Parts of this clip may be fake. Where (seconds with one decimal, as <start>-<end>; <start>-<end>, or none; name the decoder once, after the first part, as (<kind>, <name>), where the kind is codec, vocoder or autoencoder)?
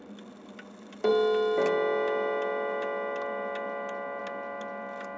none